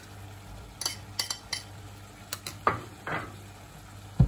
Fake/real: real